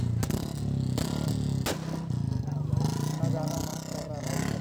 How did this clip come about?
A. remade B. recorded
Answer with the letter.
B